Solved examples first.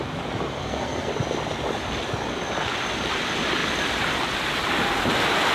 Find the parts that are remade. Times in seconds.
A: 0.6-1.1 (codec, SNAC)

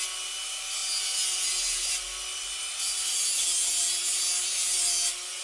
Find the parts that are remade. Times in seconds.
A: none

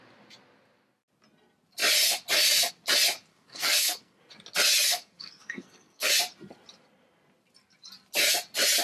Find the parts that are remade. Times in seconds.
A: 3.3-4.2 (codec, SNAC); 4.9-6.1

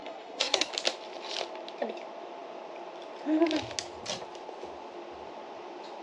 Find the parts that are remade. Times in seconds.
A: 0.0-0.7 (codec, SNAC)